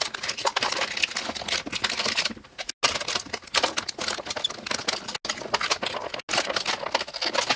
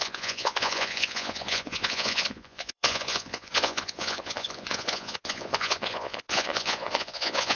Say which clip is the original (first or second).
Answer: first